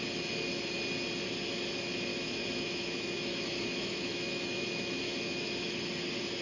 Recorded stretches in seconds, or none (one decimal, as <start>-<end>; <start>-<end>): 0.0-2.1; 5.7-6.4